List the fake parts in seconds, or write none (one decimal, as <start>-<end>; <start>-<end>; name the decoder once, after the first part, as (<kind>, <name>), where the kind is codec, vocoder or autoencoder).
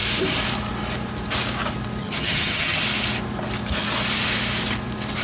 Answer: 2.0-2.8 (vocoder, HiFi-GAN)